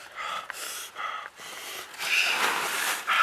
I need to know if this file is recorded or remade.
recorded